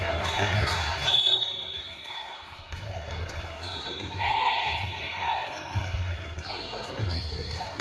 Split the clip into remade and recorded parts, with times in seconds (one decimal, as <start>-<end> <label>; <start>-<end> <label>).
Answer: 0.0-7.8 remade